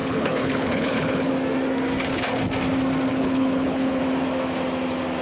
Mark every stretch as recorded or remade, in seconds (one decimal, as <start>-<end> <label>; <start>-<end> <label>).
0.0-1.3 remade; 1.3-3.1 recorded; 3.1-4.0 remade; 4.0-5.2 recorded